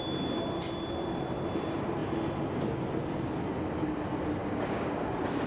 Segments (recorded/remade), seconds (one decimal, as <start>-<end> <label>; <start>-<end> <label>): 0.0-3.5 recorded; 3.5-4.0 remade; 4.0-4.4 recorded; 4.4-5.1 remade; 5.1-5.5 recorded